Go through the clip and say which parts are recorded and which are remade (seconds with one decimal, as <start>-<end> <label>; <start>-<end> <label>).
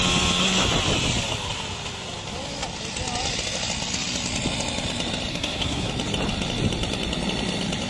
0.0-5.3 recorded; 5.3-5.9 remade; 5.9-7.9 recorded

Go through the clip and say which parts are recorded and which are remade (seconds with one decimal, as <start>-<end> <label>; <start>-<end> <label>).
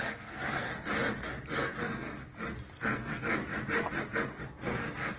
0.0-0.7 remade; 0.7-1.8 recorded; 1.8-2.2 remade; 2.2-2.7 recorded; 2.7-3.4 remade; 3.4-4.5 recorded; 4.5-5.2 remade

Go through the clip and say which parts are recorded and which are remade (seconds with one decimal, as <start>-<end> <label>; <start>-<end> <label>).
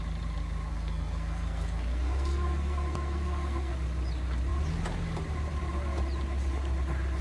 0.0-0.7 recorded; 0.7-3.7 remade; 3.7-7.2 recorded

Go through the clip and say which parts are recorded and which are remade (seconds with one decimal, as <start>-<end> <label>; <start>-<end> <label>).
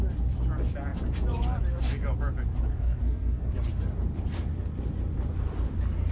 0.0-2.7 recorded; 2.7-3.5 remade; 3.5-6.1 recorded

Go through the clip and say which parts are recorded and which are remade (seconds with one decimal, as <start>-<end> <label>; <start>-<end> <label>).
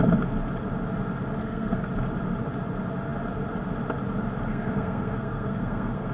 0.0-1.4 recorded; 1.4-1.9 remade; 1.9-4.5 recorded; 4.5-6.1 remade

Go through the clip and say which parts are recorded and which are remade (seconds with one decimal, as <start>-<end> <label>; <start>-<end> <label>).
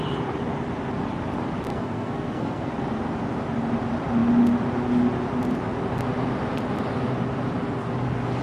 0.0-1.7 recorded; 1.7-2.7 remade; 2.7-8.4 recorded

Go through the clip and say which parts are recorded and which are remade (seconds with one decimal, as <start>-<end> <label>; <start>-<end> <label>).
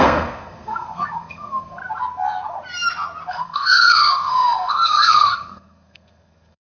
0.0-1.8 remade; 1.8-3.3 recorded; 3.3-6.7 remade